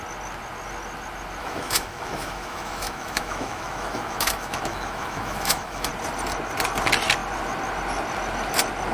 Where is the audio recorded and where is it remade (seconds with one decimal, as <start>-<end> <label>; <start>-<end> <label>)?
0.0-1.4 recorded; 1.4-5.9 remade; 5.9-8.9 recorded